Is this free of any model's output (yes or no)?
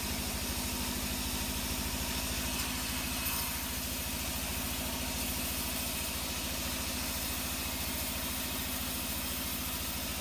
yes